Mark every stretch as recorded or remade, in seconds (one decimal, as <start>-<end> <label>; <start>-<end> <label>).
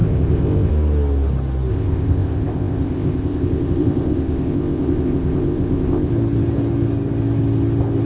0.0-0.7 remade; 0.7-1.7 recorded; 1.7-6.1 remade; 6.1-8.0 recorded